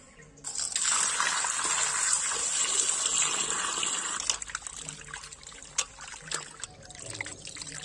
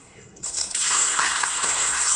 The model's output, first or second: second